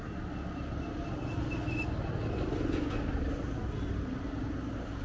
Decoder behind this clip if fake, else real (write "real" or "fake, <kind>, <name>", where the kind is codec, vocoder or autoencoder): real